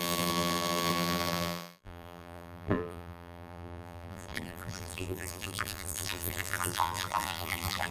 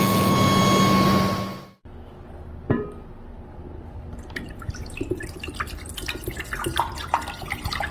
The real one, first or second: second